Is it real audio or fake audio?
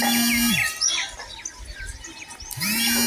real